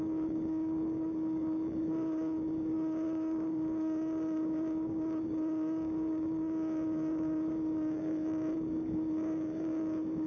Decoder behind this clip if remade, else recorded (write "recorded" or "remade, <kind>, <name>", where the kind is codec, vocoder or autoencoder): remade, codec, DAC